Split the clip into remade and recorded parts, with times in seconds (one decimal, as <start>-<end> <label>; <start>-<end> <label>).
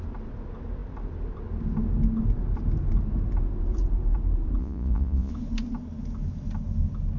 0.0-4.6 recorded; 4.6-5.3 remade; 5.3-7.2 recorded